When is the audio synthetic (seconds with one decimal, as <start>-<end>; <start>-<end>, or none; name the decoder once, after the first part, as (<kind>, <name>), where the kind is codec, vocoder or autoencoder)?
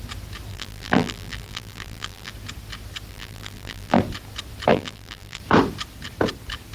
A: 0.5-2.3 (vocoder, BigVGAN v2); 3.1-4.0; 4.7-5.4